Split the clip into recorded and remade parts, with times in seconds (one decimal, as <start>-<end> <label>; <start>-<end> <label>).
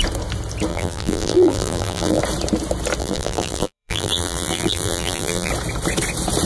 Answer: 0.0-0.7 recorded; 0.7-2.2 remade; 2.2-3.0 recorded; 3.0-5.5 remade; 5.5-6.5 recorded